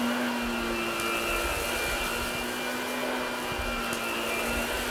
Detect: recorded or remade recorded